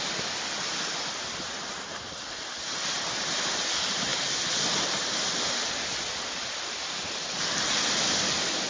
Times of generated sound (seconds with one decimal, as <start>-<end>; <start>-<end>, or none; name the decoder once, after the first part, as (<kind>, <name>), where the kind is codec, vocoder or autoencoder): none